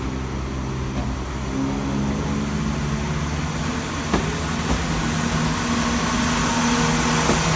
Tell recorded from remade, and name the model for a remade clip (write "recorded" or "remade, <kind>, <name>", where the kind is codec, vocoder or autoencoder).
recorded